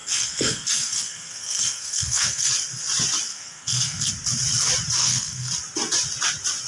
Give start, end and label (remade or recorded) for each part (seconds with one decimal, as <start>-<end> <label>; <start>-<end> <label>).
0.0-2.5 remade; 2.5-3.3 recorded; 3.3-4.1 remade; 4.1-5.0 recorded; 5.0-5.5 remade; 5.5-6.7 recorded